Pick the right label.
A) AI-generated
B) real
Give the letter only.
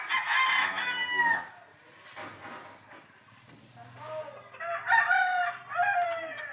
B